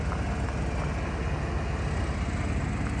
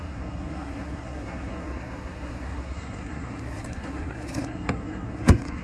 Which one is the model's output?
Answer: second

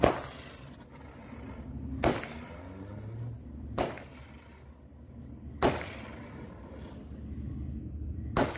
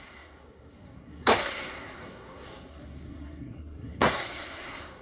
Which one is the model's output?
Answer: second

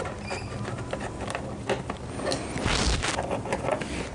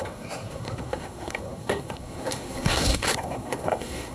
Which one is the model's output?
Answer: second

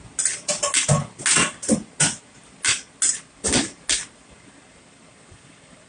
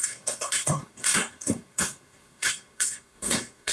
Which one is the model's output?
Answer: second